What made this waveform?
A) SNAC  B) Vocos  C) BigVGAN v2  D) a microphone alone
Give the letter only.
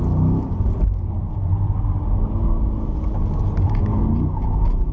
D